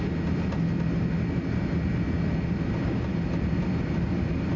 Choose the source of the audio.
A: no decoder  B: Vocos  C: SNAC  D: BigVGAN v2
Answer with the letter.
A